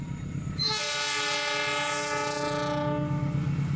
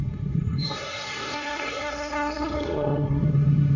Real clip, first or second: first